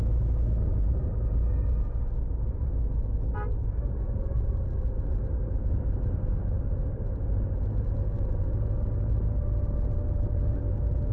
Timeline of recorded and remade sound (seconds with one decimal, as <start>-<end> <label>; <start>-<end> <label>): 0.0-0.7 recorded; 0.7-1.3 remade; 1.3-6.8 recorded; 6.8-7.6 remade; 7.6-11.1 recorded